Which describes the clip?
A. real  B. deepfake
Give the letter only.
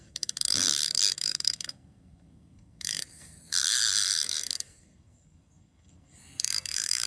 B